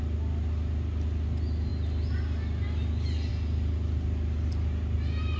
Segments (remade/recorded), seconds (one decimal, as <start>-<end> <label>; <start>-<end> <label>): 0.0-5.4 recorded